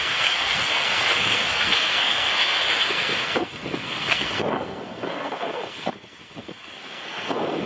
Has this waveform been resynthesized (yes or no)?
yes